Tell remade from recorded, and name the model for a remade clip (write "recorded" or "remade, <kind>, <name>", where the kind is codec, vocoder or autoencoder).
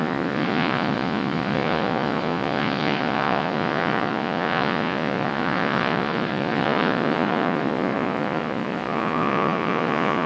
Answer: remade, vocoder, Vocos